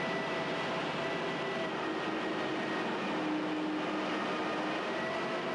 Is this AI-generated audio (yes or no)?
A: no